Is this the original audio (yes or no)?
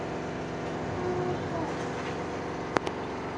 yes